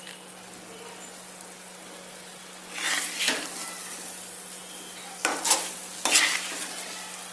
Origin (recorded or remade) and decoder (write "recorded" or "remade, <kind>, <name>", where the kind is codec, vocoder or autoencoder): recorded